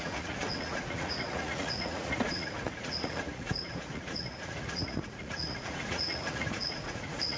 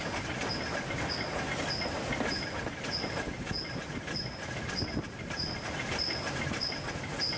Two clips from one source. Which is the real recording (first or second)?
second